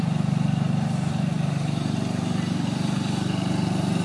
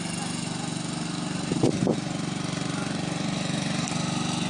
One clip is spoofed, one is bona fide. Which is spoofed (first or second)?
first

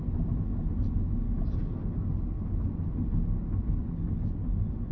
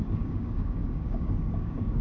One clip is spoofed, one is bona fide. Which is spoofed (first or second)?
second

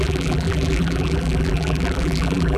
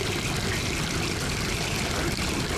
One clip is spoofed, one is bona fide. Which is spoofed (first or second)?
first